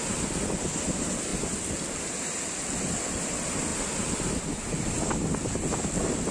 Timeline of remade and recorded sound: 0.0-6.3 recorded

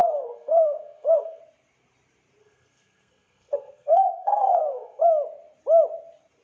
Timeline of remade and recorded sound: 0.0-1.4 remade; 1.4-2.4 recorded; 2.4-5.0 remade; 5.0-6.4 recorded